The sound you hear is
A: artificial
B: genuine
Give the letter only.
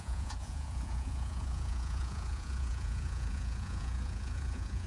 A